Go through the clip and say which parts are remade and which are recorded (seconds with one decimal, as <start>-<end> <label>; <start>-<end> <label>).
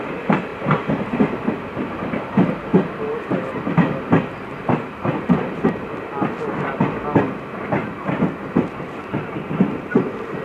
0.0-10.4 recorded